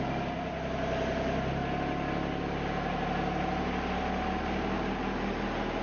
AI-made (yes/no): no